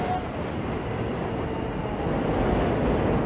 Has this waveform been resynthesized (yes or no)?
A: no